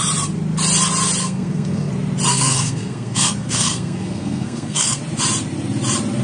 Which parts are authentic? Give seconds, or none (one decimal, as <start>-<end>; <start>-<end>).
0.0-1.2; 1.9-2.3; 5.0-6.2